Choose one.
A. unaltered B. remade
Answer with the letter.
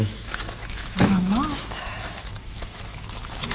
B